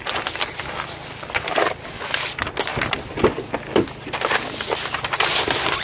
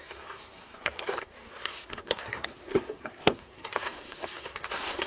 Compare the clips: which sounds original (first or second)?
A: first